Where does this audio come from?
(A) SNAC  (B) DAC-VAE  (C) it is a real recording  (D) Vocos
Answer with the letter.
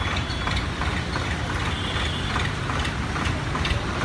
C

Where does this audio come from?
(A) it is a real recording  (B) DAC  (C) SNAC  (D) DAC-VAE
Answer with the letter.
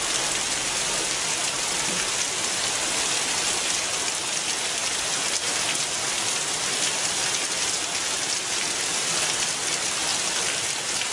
A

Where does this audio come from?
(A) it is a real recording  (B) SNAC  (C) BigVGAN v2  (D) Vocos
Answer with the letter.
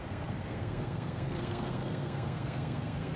B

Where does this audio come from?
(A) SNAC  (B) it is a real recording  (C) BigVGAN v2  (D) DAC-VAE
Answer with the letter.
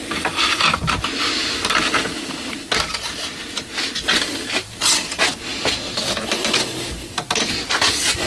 B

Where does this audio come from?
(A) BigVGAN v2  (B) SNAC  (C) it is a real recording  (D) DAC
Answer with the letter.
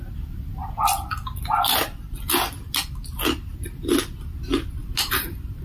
C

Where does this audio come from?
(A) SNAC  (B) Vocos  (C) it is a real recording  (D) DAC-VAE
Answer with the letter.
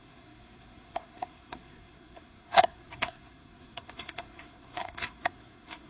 A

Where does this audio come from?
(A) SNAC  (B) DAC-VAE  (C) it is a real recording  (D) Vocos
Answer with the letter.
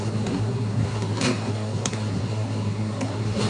A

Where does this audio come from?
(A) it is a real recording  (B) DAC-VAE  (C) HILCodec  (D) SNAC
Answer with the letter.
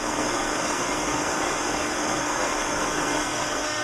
D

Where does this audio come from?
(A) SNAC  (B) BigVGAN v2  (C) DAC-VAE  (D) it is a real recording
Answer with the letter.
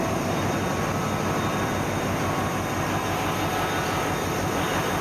D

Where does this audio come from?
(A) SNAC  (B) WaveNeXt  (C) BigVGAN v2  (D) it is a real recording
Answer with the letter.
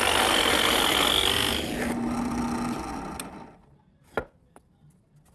D